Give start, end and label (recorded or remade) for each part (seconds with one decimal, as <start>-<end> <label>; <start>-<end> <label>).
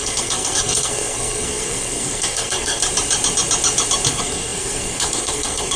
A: 0.0-2.8 remade; 2.8-4.1 recorded; 4.1-5.8 remade